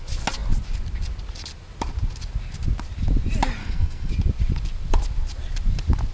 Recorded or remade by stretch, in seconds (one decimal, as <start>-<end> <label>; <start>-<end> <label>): 0.0-3.6 recorded; 3.6-4.1 remade; 4.1-6.1 recorded